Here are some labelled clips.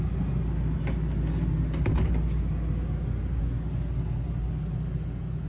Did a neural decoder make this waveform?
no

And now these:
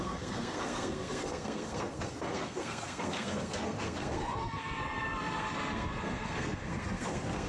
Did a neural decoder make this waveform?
yes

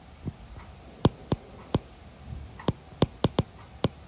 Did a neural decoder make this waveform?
no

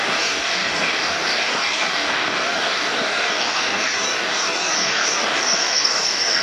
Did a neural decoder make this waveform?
yes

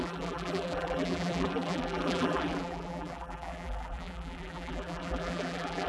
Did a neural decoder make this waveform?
yes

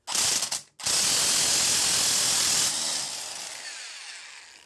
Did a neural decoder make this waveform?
no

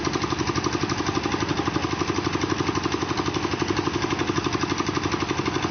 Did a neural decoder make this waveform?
no